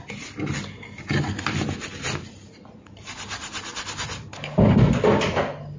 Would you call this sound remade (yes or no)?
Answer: no